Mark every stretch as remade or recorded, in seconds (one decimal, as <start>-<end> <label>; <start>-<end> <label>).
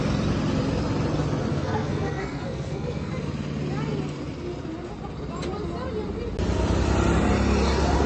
0.0-1.5 recorded; 1.5-3.1 remade; 3.1-8.1 recorded